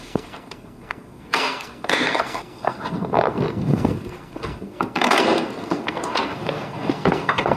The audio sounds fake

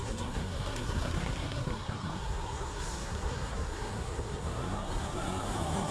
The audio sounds fake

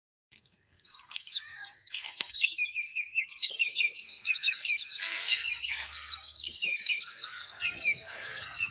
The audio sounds fake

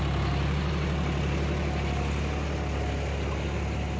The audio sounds real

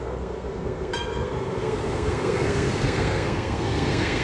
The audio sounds fake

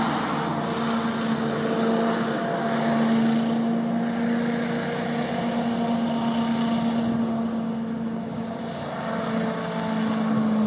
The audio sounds real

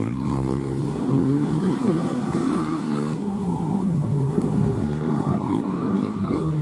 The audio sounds fake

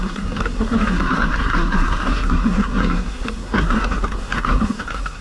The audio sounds fake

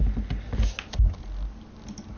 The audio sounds real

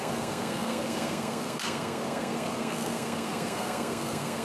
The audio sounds fake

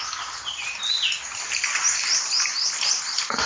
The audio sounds real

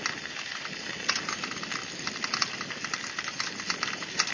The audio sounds real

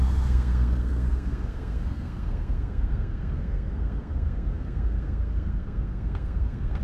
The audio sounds fake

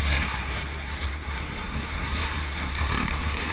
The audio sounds fake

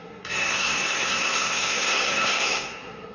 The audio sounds fake